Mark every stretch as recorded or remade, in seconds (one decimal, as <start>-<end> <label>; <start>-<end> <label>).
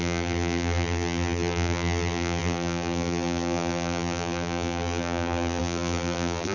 0.0-6.5 remade